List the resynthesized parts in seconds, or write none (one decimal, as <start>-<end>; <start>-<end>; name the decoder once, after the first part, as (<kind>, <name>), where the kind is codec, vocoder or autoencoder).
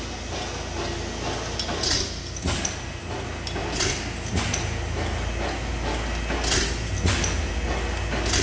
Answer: none